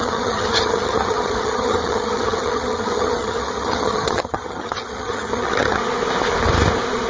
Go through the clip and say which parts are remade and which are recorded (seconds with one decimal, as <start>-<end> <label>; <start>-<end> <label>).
0.0-5.8 remade; 5.8-7.1 recorded

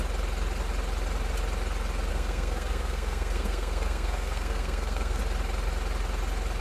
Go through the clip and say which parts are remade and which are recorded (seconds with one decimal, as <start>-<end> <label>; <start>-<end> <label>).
0.0-2.1 recorded; 2.1-5.2 remade; 5.2-6.6 recorded

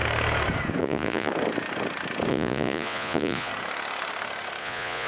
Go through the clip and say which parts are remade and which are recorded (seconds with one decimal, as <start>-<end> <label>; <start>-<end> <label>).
0.0-0.8 recorded; 0.8-1.3 remade; 1.3-2.3 recorded; 2.3-3.5 remade; 3.5-4.6 recorded; 4.6-5.1 remade

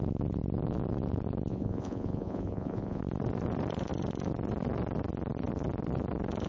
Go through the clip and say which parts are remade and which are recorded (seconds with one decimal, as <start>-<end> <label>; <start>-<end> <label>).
0.0-1.5 recorded; 1.5-3.0 remade; 3.0-6.5 recorded

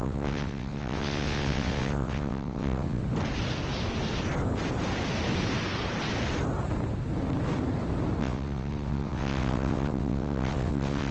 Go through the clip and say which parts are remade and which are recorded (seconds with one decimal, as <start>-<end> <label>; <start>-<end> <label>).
0.0-3.0 remade; 3.0-8.2 recorded; 8.2-11.1 remade

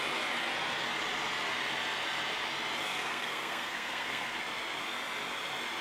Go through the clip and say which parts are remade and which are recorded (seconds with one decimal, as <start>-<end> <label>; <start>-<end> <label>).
0.0-2.9 recorded; 2.9-4.4 remade; 4.4-5.8 recorded

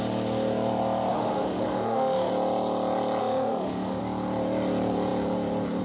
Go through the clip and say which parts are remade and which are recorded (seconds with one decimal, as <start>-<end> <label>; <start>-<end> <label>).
0.0-1.1 recorded; 1.1-2.3 remade; 2.3-3.2 recorded; 3.2-4.0 remade; 4.0-5.8 recorded

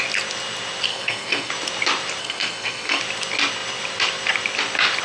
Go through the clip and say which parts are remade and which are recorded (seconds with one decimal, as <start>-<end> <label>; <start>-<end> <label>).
0.0-0.9 recorded; 0.9-1.5 remade; 1.5-2.2 recorded; 2.2-3.0 remade; 3.0-5.0 recorded